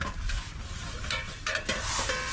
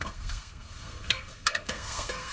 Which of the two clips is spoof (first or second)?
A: second